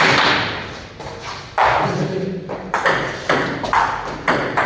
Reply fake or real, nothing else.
real